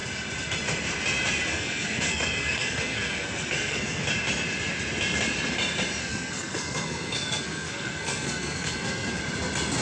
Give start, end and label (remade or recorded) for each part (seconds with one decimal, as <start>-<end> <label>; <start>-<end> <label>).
0.0-1.5 recorded; 1.5-4.0 remade; 4.0-6.0 recorded; 6.0-9.2 remade; 9.2-9.8 recorded